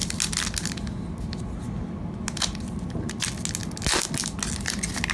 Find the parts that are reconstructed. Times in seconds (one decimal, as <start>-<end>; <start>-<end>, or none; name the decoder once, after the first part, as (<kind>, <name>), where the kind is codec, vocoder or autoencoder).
none